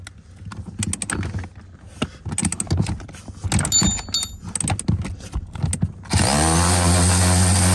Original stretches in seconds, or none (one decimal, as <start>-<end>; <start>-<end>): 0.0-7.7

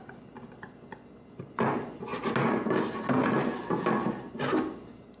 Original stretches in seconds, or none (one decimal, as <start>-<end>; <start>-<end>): 0.0-5.2

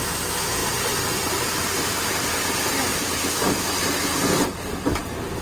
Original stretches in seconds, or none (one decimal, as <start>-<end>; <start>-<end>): 0.0-0.6; 2.3-2.9; 3.7-5.4